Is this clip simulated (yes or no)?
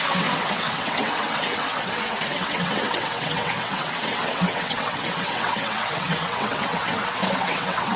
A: yes